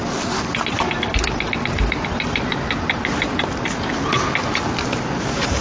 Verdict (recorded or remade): recorded